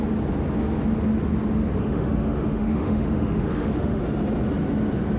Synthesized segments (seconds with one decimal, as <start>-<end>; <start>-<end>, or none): 1.8-4.0